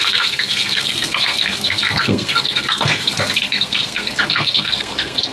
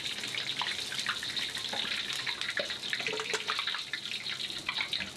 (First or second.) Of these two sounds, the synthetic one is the first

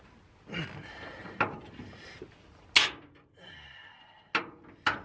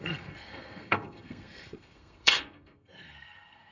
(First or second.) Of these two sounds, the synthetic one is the second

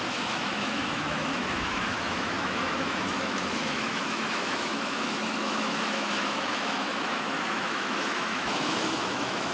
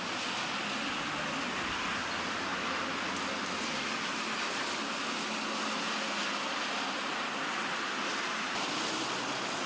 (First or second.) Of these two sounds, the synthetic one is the first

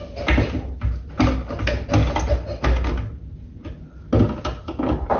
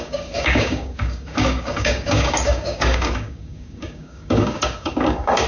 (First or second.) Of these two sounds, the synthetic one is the second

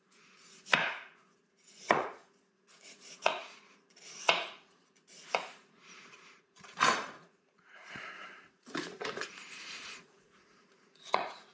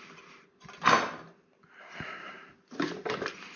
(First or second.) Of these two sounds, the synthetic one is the first